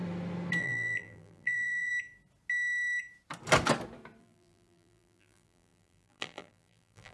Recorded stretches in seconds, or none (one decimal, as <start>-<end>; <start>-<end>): 0.0-0.6; 1.9-4.2